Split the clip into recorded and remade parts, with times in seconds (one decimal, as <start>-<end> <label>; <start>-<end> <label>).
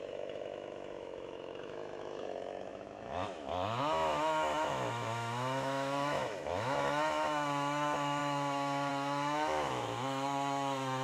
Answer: 0.0-11.0 remade